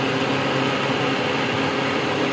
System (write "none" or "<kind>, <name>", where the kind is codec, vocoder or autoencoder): none